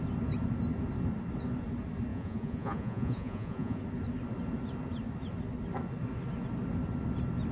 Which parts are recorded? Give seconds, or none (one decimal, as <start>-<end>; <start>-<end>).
0.0-2.1; 3.8-7.5